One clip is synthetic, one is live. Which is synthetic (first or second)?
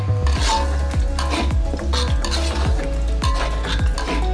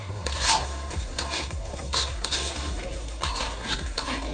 second